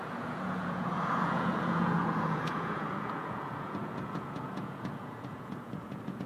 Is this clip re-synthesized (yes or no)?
yes